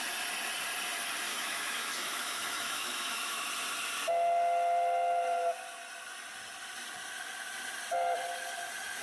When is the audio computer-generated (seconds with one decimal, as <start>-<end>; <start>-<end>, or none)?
1.3-3.5